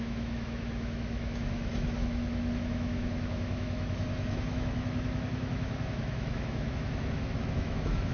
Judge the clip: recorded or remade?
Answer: remade